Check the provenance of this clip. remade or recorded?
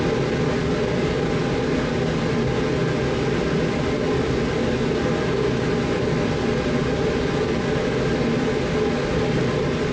recorded